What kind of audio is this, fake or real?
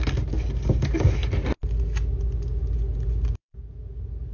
real